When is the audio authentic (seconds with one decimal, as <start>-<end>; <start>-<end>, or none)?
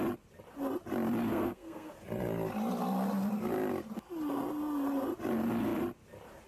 0.0-1.3; 1.9-6.5